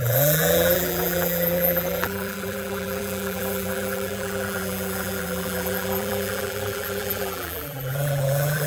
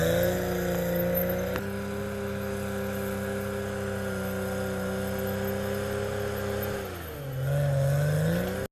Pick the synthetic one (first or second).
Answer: first